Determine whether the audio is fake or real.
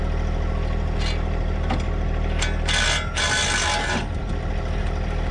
real